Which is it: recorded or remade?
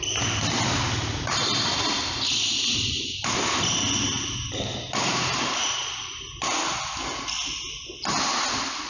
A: recorded